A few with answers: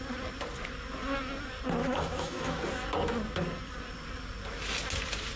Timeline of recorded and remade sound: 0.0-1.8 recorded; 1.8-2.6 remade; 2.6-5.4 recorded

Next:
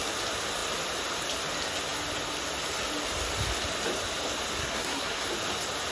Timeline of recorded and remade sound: 0.0-4.6 recorded; 4.6-5.3 remade; 5.3-5.9 recorded

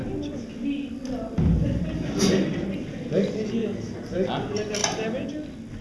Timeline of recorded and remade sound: 0.0-3.6 recorded; 3.6-4.3 remade; 4.3-4.8 recorded; 4.8-5.3 remade; 5.3-5.8 recorded

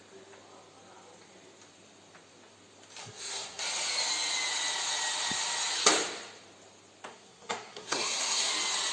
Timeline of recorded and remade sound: 0.0-3.0 recorded; 3.0-3.6 remade; 3.6-7.1 recorded; 7.1-8.5 remade; 8.5-8.9 recorded